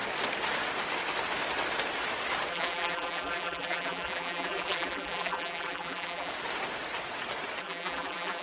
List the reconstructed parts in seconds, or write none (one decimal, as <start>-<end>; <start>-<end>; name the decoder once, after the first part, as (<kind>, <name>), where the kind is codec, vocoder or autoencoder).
2.5-6.3 (vocoder, BigVGAN v2); 7.6-8.4